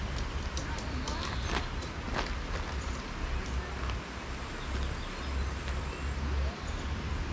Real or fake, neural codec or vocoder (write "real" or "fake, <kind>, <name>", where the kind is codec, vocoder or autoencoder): real